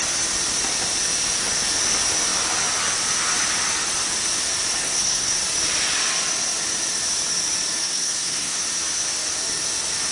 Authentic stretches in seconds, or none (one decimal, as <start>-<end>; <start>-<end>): 0.0-4.8; 5.4-7.8; 8.6-10.1